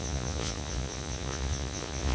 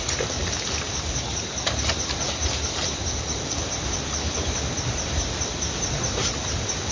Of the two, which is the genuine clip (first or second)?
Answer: second